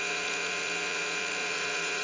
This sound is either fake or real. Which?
fake